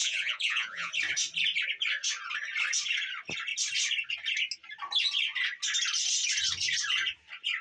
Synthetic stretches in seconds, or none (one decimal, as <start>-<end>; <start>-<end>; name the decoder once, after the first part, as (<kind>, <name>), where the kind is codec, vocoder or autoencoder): 0.0-0.9 (vocoder, Vocos)